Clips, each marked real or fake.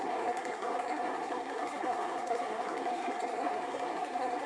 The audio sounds fake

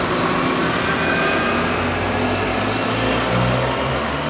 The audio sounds real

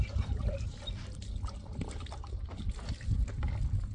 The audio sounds real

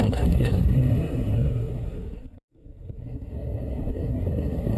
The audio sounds fake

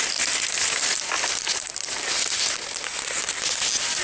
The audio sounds real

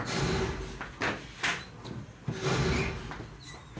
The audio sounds real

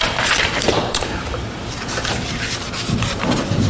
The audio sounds fake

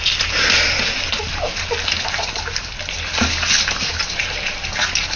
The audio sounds real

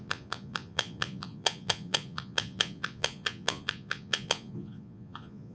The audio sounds fake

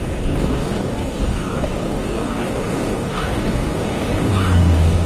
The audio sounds fake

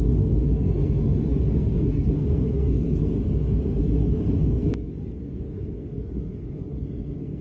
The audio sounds fake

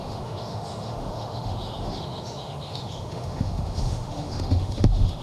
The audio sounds fake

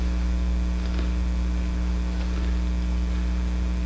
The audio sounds real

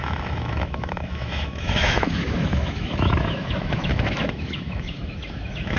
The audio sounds fake